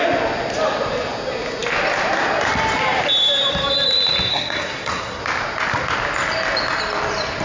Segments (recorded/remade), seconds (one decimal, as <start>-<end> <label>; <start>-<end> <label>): 0.0-4.3 recorded; 4.3-5.2 remade; 5.2-7.4 recorded